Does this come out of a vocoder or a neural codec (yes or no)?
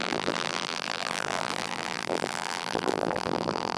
yes